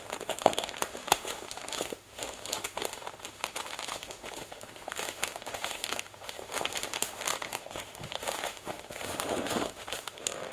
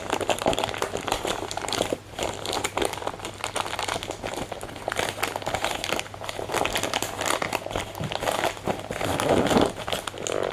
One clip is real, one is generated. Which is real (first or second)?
second